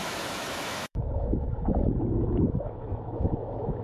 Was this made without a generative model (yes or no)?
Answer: no